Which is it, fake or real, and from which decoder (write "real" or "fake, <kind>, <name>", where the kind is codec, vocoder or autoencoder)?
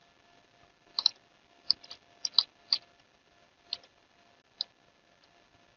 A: real